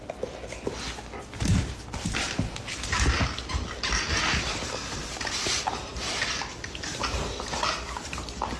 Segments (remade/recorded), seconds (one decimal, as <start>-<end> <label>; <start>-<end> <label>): 0.0-5.0 recorded; 5.0-6.1 remade; 6.1-8.6 recorded